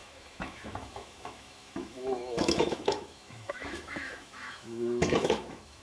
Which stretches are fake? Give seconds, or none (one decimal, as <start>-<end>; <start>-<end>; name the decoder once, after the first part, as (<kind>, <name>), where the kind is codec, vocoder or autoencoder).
0.0-5.8 (autoencoder, DAC-VAE)